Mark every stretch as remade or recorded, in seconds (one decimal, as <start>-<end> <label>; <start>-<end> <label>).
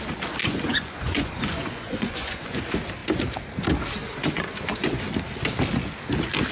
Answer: 0.0-0.4 recorded; 0.4-2.6 remade; 2.6-4.0 recorded; 4.0-5.0 remade; 5.0-6.5 recorded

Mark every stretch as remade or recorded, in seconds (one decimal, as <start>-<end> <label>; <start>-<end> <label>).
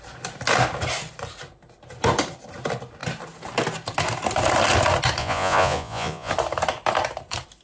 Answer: 0.0-5.2 recorded; 5.2-6.3 remade; 6.3-7.6 recorded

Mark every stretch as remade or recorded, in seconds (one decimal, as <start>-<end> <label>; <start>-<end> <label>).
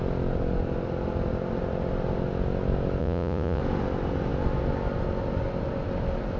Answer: 0.0-3.0 recorded; 3.0-3.6 remade; 3.6-6.4 recorded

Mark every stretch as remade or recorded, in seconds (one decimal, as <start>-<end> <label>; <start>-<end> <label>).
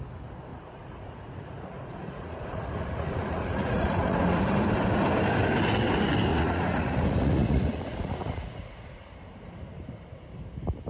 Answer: 0.0-0.5 recorded; 0.5-4.4 remade; 4.4-6.3 recorded; 6.3-9.0 remade; 9.0-10.9 recorded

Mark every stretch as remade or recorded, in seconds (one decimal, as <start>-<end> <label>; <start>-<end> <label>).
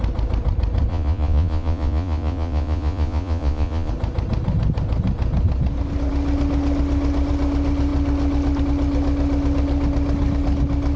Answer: 0.0-0.9 recorded; 0.9-3.9 remade; 3.9-11.0 recorded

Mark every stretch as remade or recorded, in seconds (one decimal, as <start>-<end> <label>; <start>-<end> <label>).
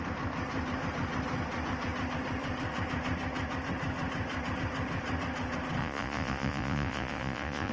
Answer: 0.0-5.8 recorded; 5.8-7.7 remade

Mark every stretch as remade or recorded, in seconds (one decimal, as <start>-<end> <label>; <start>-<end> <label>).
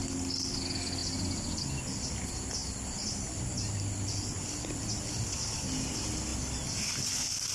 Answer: 0.0-7.5 recorded